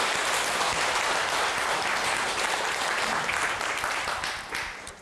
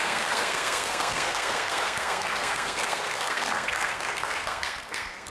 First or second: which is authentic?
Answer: first